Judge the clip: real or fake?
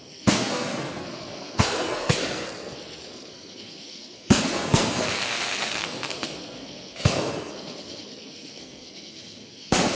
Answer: fake